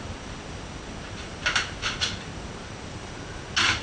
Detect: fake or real real